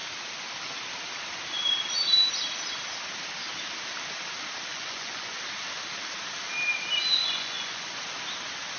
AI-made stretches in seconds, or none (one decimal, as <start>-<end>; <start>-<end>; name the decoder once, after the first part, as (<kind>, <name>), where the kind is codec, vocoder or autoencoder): 4.7-5.4 (vocoder, Vocos); 7.2-8.0